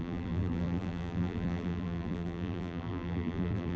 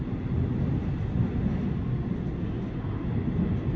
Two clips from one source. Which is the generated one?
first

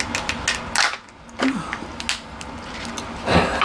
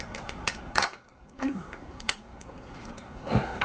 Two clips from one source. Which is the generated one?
second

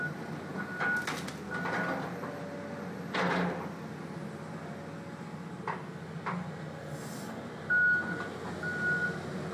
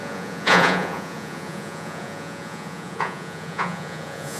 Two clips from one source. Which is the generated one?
second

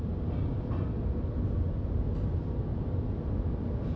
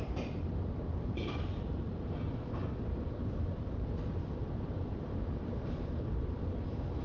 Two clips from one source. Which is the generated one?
second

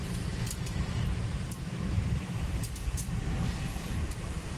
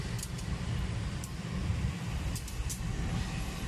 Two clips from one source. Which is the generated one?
first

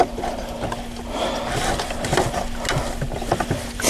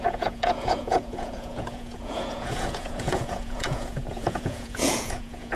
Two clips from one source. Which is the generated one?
second